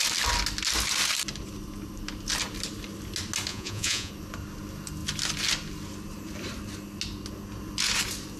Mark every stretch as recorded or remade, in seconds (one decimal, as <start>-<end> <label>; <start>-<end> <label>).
0.0-3.5 recorded; 3.5-4.1 remade; 4.1-8.4 recorded